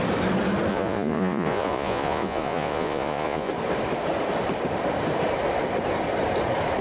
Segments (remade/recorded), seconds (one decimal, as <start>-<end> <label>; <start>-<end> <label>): 0.0-0.7 recorded; 0.7-3.5 remade; 3.5-6.8 recorded